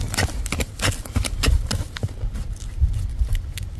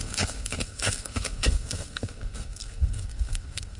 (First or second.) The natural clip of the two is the first